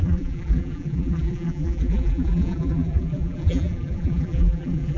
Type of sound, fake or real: fake